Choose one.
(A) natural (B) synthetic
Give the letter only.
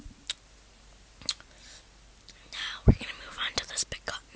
A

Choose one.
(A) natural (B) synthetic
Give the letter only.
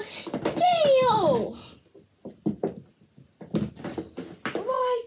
A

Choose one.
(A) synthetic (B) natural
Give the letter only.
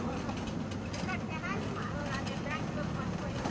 B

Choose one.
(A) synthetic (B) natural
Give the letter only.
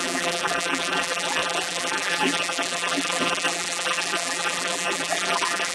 A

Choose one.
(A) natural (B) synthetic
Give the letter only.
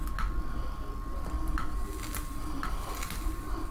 A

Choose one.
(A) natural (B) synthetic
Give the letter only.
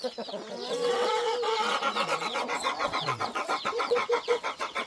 B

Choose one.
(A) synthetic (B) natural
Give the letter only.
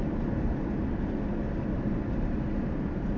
B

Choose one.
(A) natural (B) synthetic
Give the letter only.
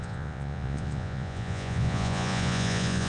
B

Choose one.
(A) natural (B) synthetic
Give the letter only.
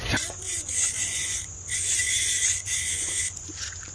B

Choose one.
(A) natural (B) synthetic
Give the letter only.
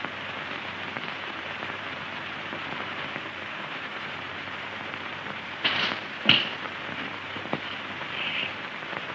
B